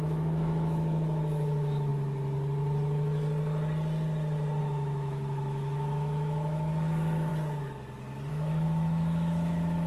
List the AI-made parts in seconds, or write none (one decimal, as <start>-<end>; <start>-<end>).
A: 0.0-1.9; 4.6-7.3; 8.3-9.9